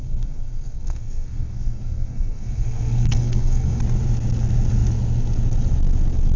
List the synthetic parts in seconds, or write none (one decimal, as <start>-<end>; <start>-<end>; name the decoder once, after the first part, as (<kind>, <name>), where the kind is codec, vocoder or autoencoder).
0.0-3.8 (codec, SNAC)